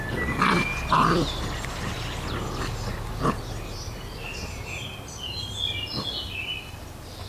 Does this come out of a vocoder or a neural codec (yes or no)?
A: no